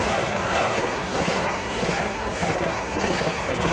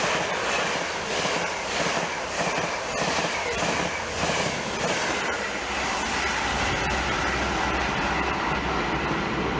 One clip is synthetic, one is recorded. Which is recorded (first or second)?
second